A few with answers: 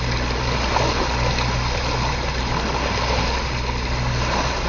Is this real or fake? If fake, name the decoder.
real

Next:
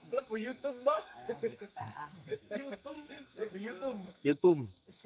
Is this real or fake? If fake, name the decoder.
fake, codec, SNAC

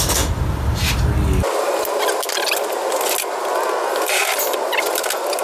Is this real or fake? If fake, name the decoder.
real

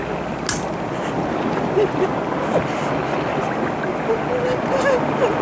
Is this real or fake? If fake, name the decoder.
real